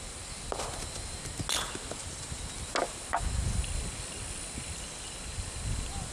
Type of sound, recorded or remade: recorded